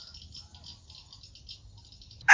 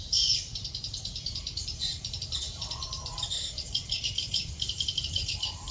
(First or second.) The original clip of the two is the first